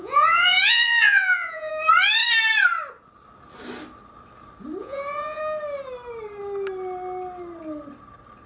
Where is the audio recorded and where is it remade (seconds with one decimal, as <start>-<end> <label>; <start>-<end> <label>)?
0.0-1.7 remade; 1.7-4.8 recorded; 4.8-5.4 remade; 5.4-8.5 recorded